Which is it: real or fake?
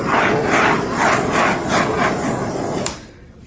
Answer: real